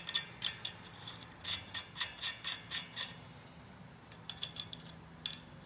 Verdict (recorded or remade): recorded